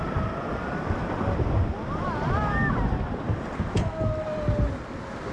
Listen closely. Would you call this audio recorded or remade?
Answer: recorded